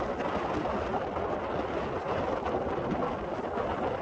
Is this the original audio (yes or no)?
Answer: yes